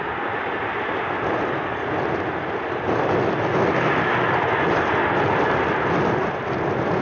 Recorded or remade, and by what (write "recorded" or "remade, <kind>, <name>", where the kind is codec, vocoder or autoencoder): recorded